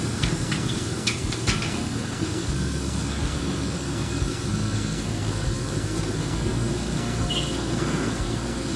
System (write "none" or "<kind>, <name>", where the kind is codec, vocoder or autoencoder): codec, SNAC